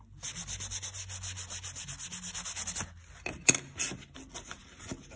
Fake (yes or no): no